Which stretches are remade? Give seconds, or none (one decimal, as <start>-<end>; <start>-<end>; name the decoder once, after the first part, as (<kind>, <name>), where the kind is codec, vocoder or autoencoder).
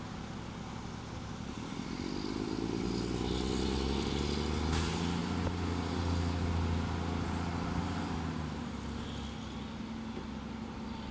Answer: none